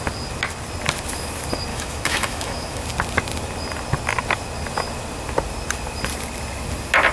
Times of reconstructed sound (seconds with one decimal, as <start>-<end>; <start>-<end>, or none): 1.7-2.8